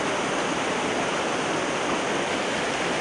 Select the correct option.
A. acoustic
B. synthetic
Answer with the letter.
A